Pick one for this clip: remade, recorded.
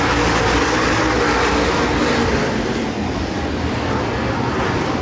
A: recorded